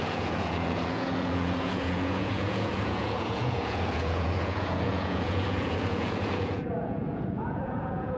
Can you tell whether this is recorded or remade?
remade